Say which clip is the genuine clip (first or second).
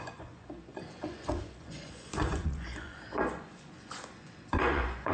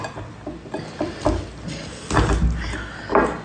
second